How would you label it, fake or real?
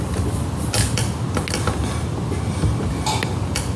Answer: real